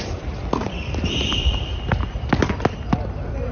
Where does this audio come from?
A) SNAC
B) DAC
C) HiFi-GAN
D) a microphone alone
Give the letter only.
D